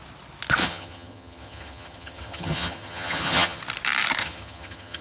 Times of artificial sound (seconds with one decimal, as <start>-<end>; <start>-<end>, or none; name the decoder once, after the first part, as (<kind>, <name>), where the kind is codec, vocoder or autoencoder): 0.6-3.6 (vocoder, HiFi-GAN); 4.2-5.0